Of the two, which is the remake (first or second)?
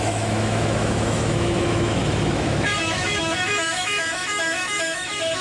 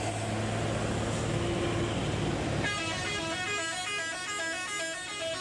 first